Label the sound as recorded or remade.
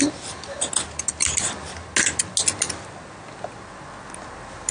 recorded